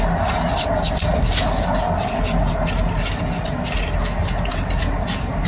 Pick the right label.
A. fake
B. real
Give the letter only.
B